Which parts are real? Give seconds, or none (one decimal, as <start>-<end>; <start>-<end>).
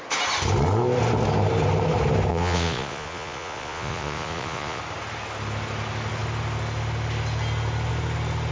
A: 0.0-2.3; 4.8-8.5